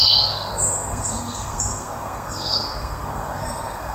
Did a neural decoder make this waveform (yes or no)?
yes